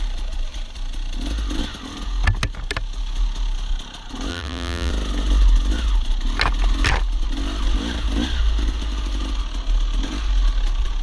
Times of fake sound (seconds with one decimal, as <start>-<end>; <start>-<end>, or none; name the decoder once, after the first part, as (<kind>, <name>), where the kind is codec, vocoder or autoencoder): 4.3-4.9 (vocoder, BigVGAN v2)